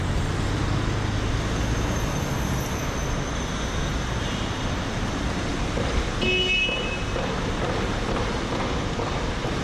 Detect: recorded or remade recorded